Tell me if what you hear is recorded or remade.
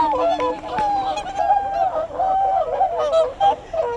remade